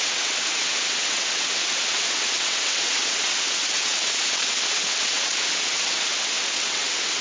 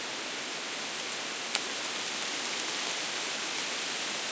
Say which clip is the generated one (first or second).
first